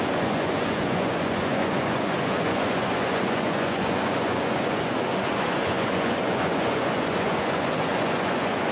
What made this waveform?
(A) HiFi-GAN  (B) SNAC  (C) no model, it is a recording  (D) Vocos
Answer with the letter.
D